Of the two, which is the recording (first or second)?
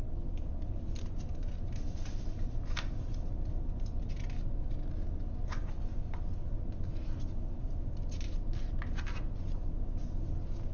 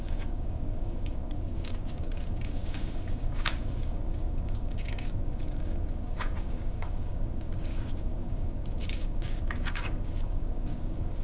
first